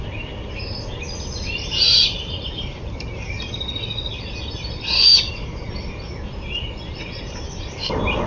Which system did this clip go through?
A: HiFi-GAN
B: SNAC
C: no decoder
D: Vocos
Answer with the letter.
C